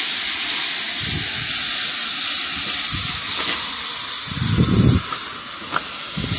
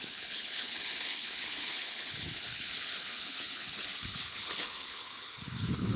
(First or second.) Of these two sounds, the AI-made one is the second